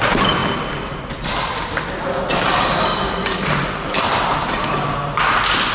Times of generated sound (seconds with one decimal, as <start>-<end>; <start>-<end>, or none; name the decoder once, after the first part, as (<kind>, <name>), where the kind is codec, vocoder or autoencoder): none